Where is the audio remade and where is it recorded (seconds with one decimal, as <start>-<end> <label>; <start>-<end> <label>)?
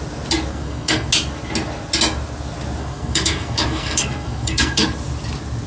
0.0-0.5 recorded; 0.5-1.1 remade; 1.1-2.8 recorded; 2.8-4.9 remade; 4.9-5.7 recorded